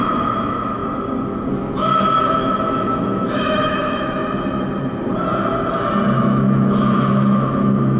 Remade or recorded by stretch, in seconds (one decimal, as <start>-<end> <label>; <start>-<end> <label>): 0.0-0.8 remade; 0.8-1.5 recorded; 1.5-4.2 remade; 4.2-6.2 recorded; 6.2-8.0 remade